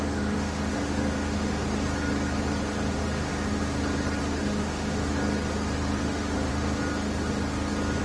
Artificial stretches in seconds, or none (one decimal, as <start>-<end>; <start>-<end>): 0.0-1.6; 2.9-3.3; 4.2-5.2; 6.0-6.5